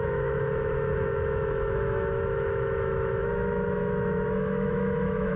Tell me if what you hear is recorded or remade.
remade